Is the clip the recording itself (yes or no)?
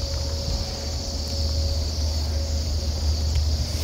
yes